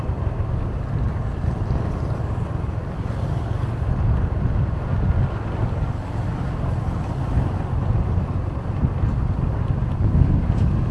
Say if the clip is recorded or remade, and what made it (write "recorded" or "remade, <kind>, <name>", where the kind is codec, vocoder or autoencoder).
recorded